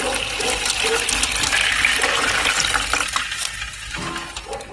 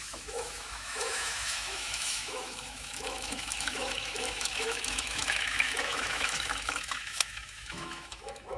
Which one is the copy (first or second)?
second